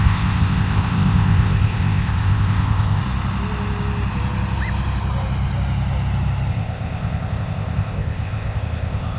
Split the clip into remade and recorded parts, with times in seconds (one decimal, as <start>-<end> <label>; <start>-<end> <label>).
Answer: 0.0-3.0 remade; 3.0-6.5 recorded; 6.5-9.2 remade

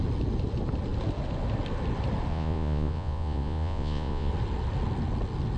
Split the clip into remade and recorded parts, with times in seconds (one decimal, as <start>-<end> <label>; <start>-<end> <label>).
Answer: 0.0-2.3 recorded; 2.3-4.3 remade; 4.3-5.6 recorded

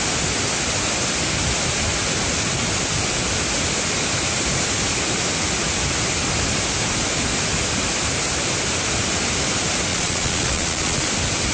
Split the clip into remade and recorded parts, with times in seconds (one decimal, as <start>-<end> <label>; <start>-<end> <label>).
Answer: 0.0-9.9 recorded; 9.9-11.1 remade; 11.1-11.5 recorded

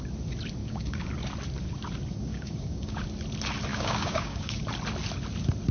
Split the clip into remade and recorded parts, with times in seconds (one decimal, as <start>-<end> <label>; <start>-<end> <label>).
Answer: 0.0-0.6 recorded; 0.6-1.1 remade; 1.1-2.3 recorded; 2.3-3.0 remade; 3.0-3.7 recorded; 3.7-4.6 remade; 4.6-5.7 recorded

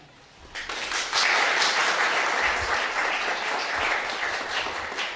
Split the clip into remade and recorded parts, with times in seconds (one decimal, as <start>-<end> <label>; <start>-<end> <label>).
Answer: 0.0-5.2 remade

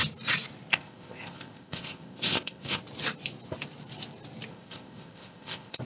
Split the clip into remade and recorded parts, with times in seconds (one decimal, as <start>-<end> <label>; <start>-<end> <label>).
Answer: 0.0-0.7 recorded; 0.7-2.8 remade; 2.8-4.5 recorded; 4.5-5.8 remade

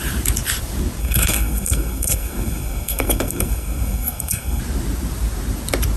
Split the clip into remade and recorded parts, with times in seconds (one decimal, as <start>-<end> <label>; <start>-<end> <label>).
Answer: 0.0-1.0 recorded; 1.0-4.6 remade; 4.6-6.0 recorded